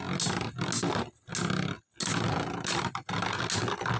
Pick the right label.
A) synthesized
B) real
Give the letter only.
B